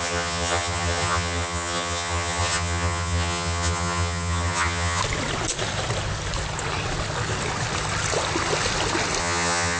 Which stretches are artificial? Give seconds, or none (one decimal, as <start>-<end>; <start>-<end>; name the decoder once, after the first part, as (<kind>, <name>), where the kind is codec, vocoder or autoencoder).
0.0-5.0 (vocoder, HiFi-GAN); 9.2-9.8